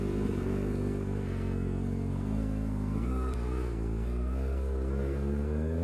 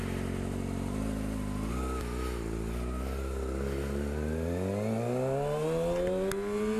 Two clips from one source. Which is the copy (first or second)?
first